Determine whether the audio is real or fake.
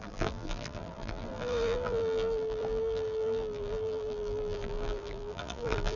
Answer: fake